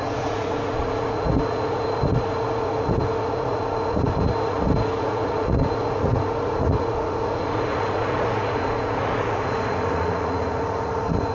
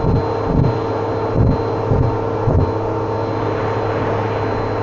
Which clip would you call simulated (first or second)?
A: first